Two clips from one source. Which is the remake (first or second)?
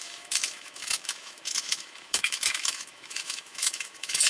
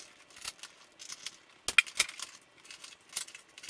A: first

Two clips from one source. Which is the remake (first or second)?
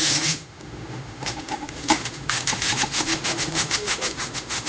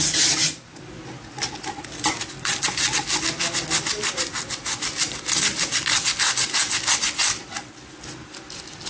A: first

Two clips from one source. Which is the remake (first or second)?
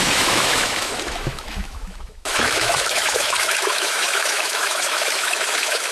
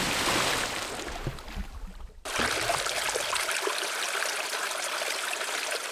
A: first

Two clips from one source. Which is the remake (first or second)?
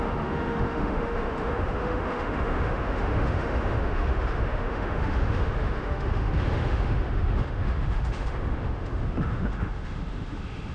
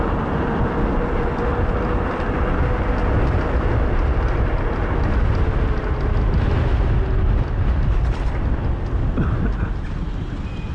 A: first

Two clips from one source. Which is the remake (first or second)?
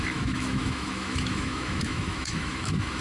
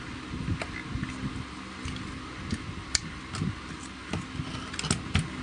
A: first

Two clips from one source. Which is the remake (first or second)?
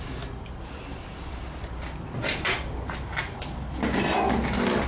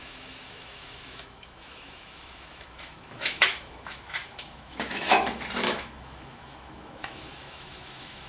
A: second